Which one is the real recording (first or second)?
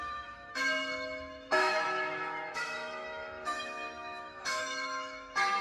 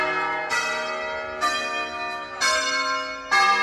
second